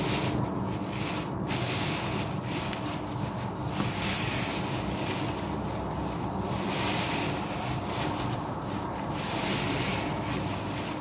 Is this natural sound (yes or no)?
yes